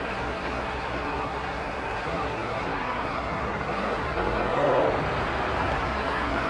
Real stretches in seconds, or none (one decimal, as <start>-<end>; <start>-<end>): 4.8-5.6